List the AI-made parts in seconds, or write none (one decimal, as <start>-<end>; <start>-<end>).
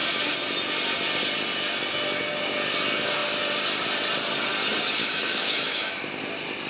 5.0-6.0